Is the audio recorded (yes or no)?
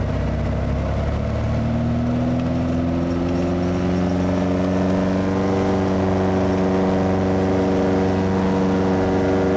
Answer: yes